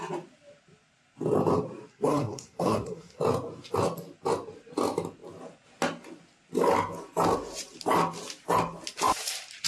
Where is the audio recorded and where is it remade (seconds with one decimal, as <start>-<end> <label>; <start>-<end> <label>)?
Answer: 0.0-1.9 recorded; 1.9-3.2 remade; 3.2-9.7 recorded